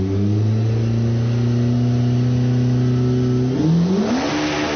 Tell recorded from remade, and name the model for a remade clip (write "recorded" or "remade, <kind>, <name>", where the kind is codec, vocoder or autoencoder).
recorded